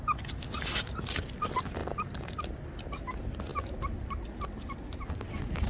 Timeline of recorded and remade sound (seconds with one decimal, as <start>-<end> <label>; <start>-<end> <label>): 0.0-5.7 recorded